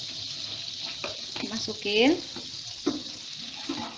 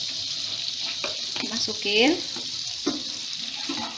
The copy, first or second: second